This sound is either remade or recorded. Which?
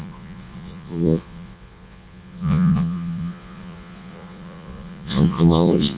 remade